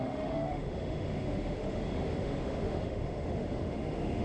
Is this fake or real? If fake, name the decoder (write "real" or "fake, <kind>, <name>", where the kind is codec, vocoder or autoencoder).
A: fake, autoencoder, DAC-VAE